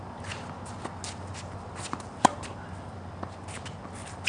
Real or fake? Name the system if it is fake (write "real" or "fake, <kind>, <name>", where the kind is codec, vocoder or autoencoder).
real